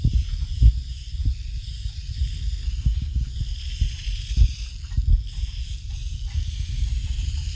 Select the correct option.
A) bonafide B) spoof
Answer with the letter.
A